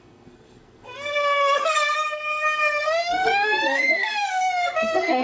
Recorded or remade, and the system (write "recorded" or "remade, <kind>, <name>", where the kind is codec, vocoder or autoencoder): remade, codec, SNAC